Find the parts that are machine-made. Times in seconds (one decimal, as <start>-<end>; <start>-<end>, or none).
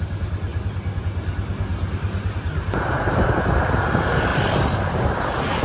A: 1.7-2.4; 4.3-5.6